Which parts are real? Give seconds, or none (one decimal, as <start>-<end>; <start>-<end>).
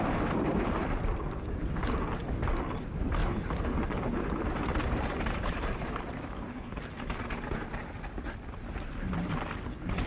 0.0-3.2; 6.8-10.1